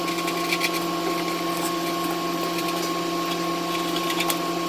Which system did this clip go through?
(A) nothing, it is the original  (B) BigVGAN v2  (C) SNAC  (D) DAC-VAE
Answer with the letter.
A